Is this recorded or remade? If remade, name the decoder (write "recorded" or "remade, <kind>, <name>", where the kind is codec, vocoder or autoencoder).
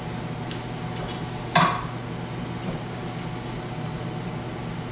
recorded